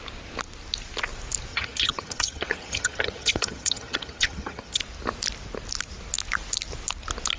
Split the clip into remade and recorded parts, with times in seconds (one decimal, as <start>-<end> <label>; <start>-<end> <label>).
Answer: 0.0-1.5 recorded; 1.5-4.8 remade; 4.8-7.4 recorded